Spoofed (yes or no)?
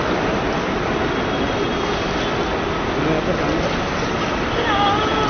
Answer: no